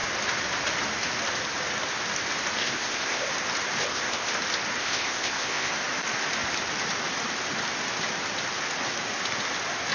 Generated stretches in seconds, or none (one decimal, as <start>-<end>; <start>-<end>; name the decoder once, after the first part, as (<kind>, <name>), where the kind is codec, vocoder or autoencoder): 2.6-3.3 (codec, ZipCodec); 3.8-4.3; 4.8-5.7